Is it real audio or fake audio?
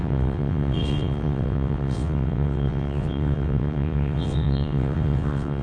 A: fake